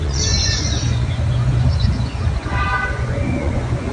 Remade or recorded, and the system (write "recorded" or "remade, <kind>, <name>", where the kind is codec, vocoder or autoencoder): remade, vocoder, Vocos